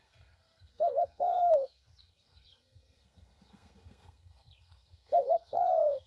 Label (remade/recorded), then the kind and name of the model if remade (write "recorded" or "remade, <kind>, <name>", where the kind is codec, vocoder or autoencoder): remade, codec, SNAC